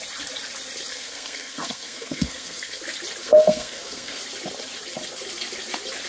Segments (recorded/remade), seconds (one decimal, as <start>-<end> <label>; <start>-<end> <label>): 0.0-0.9 recorded; 0.9-2.8 remade; 2.8-3.2 recorded; 3.2-4.2 remade; 4.2-6.1 recorded